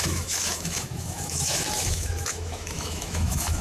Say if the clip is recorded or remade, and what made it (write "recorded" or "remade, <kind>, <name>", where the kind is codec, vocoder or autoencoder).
remade, autoencoder, DAC-VAE